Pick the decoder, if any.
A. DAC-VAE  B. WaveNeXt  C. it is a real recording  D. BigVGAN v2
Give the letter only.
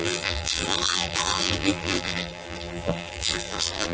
D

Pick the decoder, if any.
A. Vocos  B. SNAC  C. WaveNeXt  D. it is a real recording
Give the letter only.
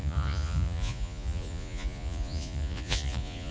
A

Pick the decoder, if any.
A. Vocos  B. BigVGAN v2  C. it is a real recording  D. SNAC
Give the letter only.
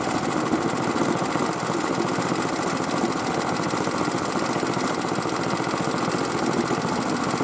C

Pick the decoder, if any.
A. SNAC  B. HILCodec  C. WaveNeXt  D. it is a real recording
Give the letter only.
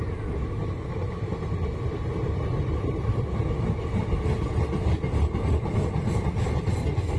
D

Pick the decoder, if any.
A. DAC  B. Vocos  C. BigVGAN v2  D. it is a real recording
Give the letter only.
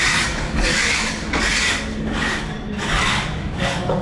A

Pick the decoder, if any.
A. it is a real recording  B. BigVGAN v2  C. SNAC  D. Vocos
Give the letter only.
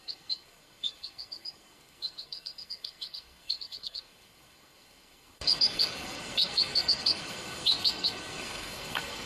C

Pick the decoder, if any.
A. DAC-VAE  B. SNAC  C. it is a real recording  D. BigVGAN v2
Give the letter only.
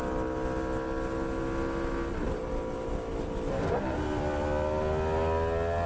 C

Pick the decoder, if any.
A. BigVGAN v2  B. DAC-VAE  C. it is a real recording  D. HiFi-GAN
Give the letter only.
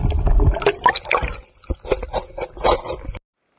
C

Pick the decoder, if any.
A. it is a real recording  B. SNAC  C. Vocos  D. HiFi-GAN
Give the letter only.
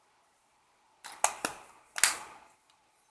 A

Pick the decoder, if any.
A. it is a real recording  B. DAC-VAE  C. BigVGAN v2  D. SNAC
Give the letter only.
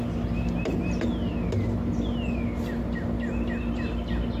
A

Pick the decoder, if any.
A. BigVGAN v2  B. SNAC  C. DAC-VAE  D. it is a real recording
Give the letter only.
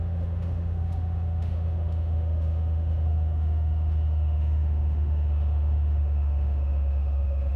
C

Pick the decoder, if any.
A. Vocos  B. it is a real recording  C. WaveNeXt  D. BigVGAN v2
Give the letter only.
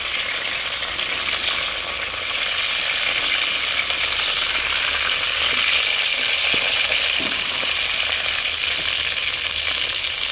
B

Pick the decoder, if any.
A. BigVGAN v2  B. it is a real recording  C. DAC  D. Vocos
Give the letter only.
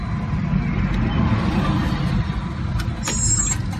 B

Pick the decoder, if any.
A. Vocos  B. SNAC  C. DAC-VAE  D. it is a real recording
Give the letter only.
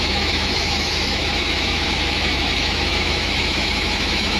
C